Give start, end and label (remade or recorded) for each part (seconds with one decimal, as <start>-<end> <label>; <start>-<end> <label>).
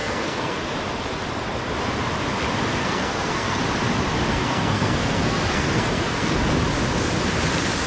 0.0-0.6 remade; 0.6-2.8 recorded; 2.8-3.6 remade; 3.6-4.3 recorded; 4.3-6.4 remade; 6.4-7.9 recorded